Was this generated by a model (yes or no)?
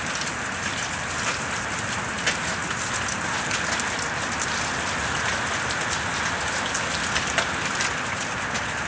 no